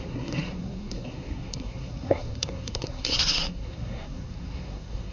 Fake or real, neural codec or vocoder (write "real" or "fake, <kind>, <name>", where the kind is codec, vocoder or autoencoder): fake, codec, SNAC